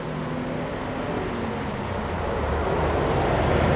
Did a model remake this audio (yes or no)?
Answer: no